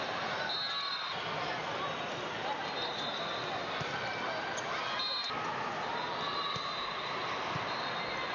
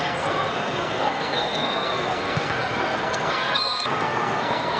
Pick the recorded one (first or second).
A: first